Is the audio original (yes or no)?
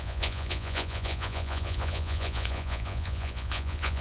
no